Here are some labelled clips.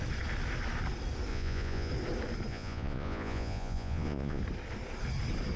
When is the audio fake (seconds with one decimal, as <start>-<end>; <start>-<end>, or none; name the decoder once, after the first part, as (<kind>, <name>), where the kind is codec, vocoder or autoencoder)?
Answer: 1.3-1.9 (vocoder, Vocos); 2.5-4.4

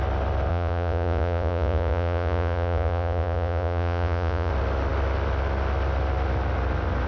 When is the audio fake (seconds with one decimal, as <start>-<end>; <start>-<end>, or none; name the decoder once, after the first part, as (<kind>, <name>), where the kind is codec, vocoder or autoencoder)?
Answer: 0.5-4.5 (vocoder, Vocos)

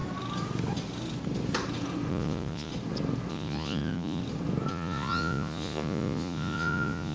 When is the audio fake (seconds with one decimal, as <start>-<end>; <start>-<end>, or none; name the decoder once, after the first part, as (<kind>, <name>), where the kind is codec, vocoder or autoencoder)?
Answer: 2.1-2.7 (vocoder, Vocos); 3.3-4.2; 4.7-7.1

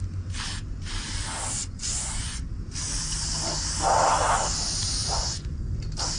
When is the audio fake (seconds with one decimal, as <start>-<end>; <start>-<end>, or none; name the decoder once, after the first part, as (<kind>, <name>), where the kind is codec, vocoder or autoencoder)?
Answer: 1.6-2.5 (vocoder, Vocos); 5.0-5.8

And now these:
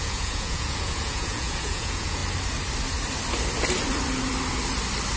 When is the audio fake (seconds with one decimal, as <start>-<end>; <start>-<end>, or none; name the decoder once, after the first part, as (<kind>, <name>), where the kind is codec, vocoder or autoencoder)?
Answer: 0.0-2.2 (vocoder, Vocos)